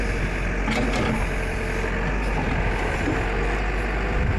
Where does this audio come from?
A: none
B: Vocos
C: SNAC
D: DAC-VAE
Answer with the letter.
A